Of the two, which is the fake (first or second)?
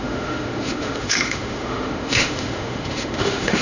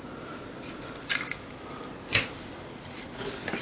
first